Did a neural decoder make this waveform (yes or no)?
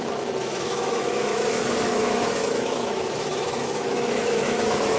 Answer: yes